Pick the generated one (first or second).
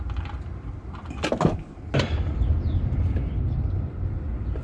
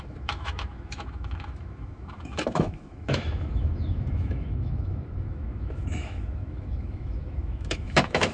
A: second